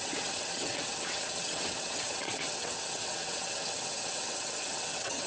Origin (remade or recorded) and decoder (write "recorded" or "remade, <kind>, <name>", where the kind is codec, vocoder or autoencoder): remade, vocoder, WaveNeXt